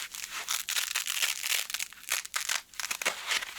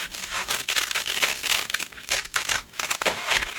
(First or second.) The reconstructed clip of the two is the second